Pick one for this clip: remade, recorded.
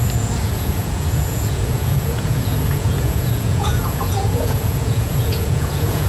remade